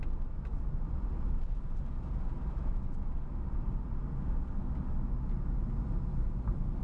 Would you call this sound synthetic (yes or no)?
no